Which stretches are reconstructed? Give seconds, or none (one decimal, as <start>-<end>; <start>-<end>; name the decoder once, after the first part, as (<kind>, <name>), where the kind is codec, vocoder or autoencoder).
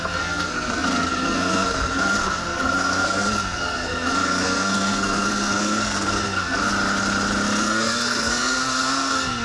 0.0-6.7 (codec, SNAC); 7.6-9.4